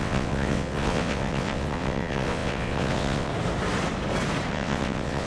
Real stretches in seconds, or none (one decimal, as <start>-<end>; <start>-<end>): 3.3-4.5